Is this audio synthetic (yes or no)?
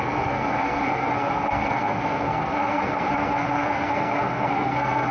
yes